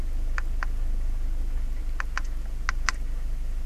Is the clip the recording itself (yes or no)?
yes